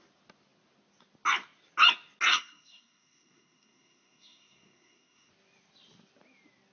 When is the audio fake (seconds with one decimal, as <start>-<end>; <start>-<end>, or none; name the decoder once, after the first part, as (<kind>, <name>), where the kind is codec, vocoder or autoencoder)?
2.3-5.3 (codec, SNAC)